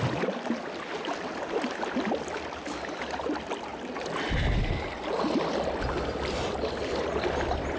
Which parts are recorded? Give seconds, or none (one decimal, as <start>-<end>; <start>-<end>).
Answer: 0.0-7.8

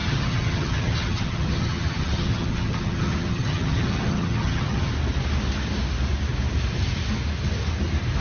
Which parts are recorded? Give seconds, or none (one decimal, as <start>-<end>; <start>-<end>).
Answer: 4.9-8.2

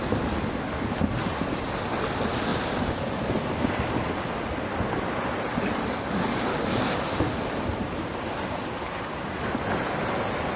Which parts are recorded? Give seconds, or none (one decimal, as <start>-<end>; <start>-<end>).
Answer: 0.0-10.6

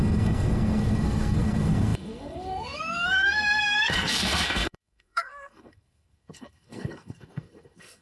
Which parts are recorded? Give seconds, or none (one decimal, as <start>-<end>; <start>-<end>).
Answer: none

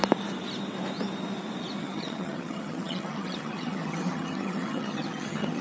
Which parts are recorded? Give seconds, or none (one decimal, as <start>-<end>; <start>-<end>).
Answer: 0.0-1.8

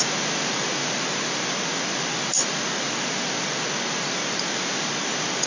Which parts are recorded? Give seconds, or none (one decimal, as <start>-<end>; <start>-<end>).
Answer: 0.0-5.5